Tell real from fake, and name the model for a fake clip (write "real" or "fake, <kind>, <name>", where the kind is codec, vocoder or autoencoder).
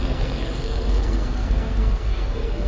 fake, codec, SNAC